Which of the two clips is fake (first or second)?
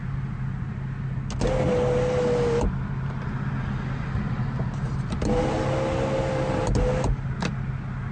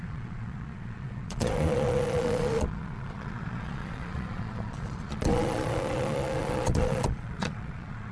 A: second